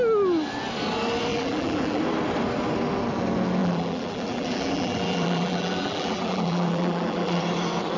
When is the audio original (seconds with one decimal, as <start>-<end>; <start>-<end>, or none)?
0.0-1.3; 2.0-3.6; 7.4-8.0